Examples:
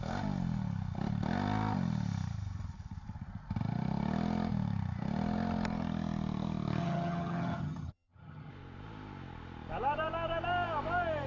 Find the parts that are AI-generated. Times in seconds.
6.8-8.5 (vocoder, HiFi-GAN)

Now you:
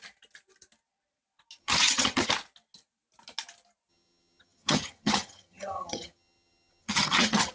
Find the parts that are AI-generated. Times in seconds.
1.6-2.3 (vocoder, HiFi-GAN); 3.9-7.5

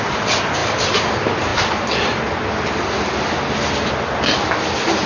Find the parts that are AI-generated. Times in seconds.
none

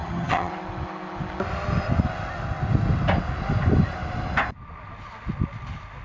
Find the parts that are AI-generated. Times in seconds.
0.0-0.5 (vocoder, HiFi-GAN)

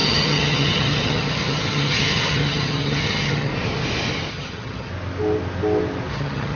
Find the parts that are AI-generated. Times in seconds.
0.0-3.5 (vocoder, HiFi-GAN); 4.3-4.9; 6.1-6.5